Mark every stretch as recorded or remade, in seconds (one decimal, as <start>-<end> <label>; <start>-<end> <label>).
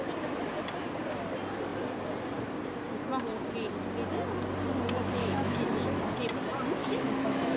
0.0-5.2 recorded; 5.2-6.0 remade; 6.0-6.8 recorded; 6.8-7.6 remade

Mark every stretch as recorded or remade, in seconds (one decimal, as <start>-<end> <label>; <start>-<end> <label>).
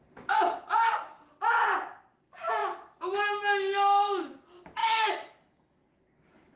0.0-4.8 recorded; 4.8-5.8 remade; 5.8-6.6 recorded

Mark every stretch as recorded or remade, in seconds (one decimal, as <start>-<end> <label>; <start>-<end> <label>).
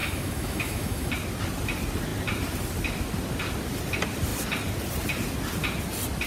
0.0-1.1 remade; 1.1-6.3 recorded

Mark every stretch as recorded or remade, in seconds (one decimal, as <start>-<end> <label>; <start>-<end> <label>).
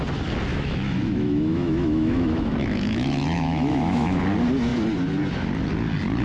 0.0-0.5 recorded; 0.5-4.2 remade; 4.2-6.2 recorded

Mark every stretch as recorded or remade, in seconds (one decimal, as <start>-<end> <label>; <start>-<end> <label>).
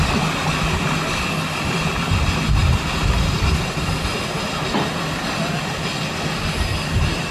0.0-7.3 recorded